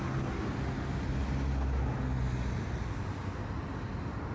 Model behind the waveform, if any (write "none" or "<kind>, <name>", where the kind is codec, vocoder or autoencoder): none